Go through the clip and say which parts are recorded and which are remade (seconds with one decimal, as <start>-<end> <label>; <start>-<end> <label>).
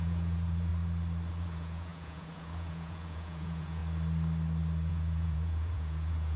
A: 0.0-0.7 remade; 0.7-1.3 recorded; 1.3-3.8 remade; 3.8-4.9 recorded; 4.9-6.4 remade